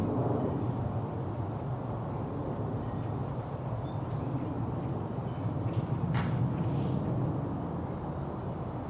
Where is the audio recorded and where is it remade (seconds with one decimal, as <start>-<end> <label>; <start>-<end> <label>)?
0.0-0.8 remade; 0.8-8.9 recorded